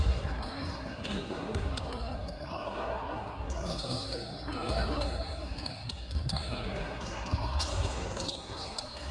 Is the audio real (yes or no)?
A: no